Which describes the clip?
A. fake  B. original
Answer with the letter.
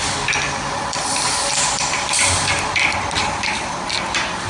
A